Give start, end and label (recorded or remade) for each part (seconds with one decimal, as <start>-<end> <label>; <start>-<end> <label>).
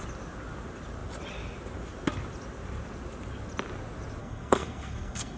0.0-4.2 recorded; 4.2-5.4 remade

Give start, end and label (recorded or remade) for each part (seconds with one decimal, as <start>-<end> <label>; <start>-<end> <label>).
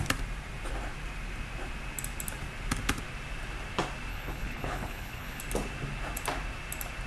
0.0-4.1 recorded; 4.1-5.4 remade; 5.4-7.1 recorded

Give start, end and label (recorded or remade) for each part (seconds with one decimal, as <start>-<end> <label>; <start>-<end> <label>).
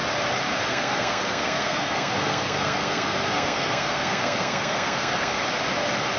0.0-0.7 recorded; 0.7-5.4 remade; 5.4-6.2 recorded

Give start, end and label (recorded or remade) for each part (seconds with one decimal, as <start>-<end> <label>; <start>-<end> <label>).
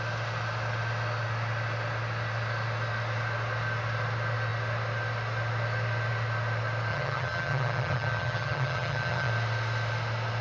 0.0-6.9 recorded; 6.9-9.3 remade; 9.3-10.4 recorded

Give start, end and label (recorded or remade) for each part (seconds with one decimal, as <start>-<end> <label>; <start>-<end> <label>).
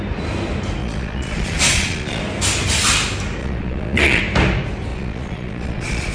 0.0-0.8 recorded; 0.8-2.2 remade; 2.2-3.4 recorded; 3.4-4.2 remade; 4.2-4.9 recorded; 4.9-6.1 remade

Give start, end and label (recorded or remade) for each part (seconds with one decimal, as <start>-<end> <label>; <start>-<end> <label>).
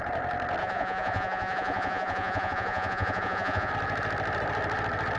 0.0-0.6 recorded; 0.6-3.7 remade; 3.7-5.2 recorded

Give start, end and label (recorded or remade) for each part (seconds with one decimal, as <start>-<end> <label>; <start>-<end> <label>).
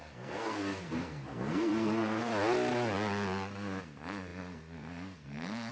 0.0-2.3 remade; 2.3-3.8 recorded; 3.8-5.7 remade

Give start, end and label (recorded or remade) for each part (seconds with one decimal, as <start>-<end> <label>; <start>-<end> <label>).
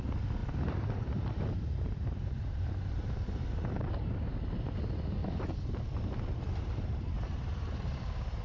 0.0-0.4 recorded; 0.4-4.8 remade; 4.8-5.2 recorded; 5.2-8.4 remade